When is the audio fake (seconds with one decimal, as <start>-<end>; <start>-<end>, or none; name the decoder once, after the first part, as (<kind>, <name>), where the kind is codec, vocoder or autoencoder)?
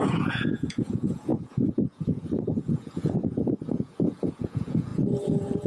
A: 0.0-5.7 (vocoder, Vocos)